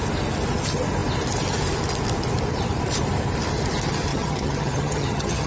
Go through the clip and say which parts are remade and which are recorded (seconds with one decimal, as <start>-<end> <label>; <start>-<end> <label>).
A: 0.0-4.1 recorded; 4.1-5.5 remade